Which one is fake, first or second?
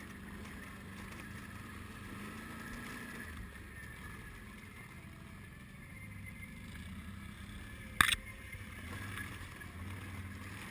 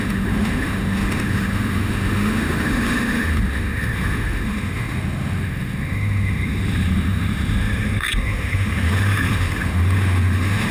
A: second